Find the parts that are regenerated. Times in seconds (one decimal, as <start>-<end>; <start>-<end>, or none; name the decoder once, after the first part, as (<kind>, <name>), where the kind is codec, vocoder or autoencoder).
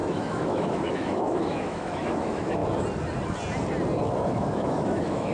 0.0-2.6 (autoencoder, DAC-VAE); 4.3-5.3